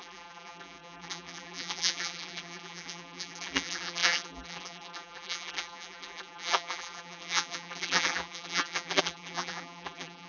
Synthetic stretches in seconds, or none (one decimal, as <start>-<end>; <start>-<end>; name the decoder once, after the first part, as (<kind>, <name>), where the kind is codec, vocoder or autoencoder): 0.0-10.3 (vocoder, BigVGAN v2)